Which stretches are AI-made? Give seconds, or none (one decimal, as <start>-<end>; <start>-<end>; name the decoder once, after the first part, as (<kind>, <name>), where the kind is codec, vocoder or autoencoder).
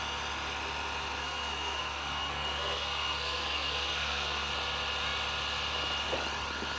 1.2-4.5 (codec, SNAC)